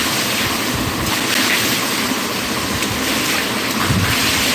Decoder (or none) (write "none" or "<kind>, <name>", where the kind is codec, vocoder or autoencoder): none